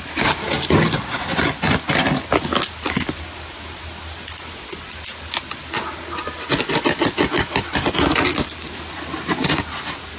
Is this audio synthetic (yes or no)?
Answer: no